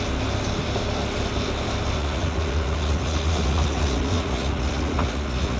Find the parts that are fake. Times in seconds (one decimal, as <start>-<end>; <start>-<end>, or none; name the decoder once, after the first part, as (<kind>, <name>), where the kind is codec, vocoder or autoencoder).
2.0-5.6 (vocoder, Vocos)